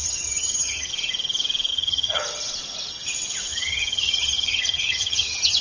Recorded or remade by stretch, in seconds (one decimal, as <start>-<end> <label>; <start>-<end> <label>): 0.0-0.9 remade; 0.9-1.7 recorded; 1.7-2.2 remade; 2.2-3.5 recorded; 3.5-5.6 remade